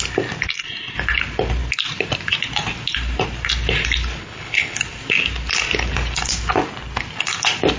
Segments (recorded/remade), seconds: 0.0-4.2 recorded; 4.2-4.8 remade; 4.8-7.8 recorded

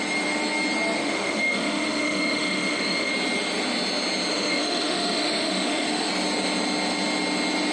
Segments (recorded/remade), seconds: 0.0-1.0 recorded; 1.0-3.1 remade; 3.1-4.3 recorded; 4.3-6.1 remade; 6.1-7.7 recorded

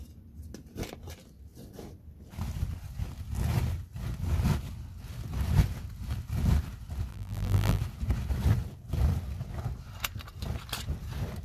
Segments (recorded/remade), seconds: 0.0-7.1 recorded; 7.1-7.8 remade; 7.8-11.4 recorded

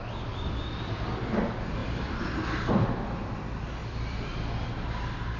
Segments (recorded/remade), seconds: 0.0-1.8 recorded; 1.8-3.4 remade; 3.4-3.8 recorded; 3.8-4.7 remade; 4.7-5.4 recorded

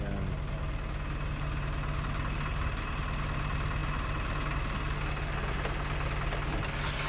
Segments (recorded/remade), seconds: 0.0-7.1 recorded

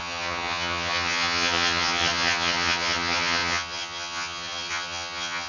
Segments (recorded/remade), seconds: 0.0-5.5 remade